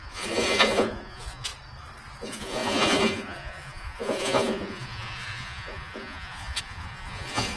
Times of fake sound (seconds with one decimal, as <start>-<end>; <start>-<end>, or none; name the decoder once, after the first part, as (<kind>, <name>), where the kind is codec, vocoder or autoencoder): 0.0-1.5 (vocoder, Vocos); 2.2-7.6